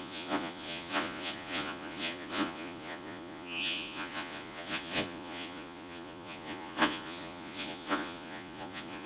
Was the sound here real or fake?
fake